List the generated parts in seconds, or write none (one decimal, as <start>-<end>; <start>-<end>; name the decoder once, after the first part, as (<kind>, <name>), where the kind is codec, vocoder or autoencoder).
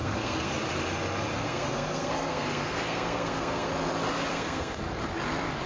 0.0-0.5 (codec, SNAC); 1.3-3.7; 4.3-4.8